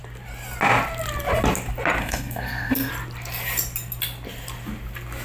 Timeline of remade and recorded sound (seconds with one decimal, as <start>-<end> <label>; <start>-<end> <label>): 0.0-2.0 recorded; 2.0-2.9 remade; 2.9-5.2 recorded